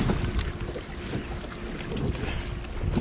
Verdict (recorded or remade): recorded